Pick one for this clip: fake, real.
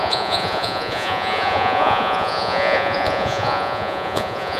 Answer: fake